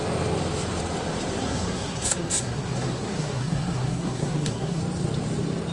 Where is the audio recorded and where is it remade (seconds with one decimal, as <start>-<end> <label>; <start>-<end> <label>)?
0.0-1.4 recorded; 1.4-4.8 remade; 4.8-5.7 recorded